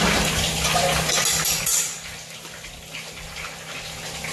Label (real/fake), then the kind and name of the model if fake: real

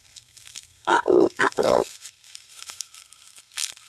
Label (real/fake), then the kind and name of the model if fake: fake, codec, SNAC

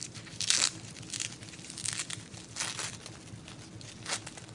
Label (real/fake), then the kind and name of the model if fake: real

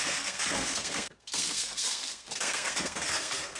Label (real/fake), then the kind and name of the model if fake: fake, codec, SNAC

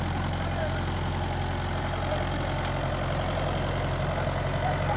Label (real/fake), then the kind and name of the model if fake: real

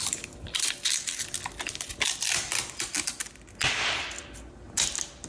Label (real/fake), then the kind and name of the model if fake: real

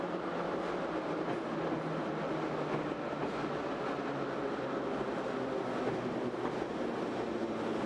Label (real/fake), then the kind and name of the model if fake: real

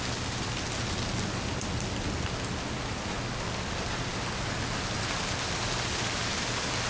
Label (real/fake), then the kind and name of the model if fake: real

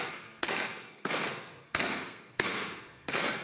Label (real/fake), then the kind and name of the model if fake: fake, codec, SNAC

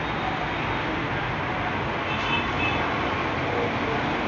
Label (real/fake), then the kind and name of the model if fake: real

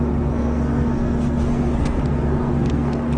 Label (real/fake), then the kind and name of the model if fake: fake, codec, SNAC